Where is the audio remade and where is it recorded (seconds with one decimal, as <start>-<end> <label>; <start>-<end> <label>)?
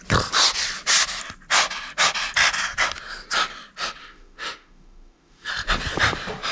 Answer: 0.0-4.0 recorded; 4.0-5.5 remade; 5.5-6.5 recorded